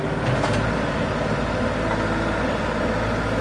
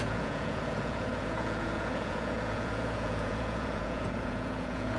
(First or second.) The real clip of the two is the first